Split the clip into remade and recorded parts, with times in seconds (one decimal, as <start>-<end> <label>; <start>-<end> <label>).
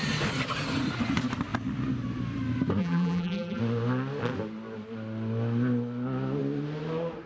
0.0-2.8 recorded; 2.8-3.6 remade; 3.6-7.3 recorded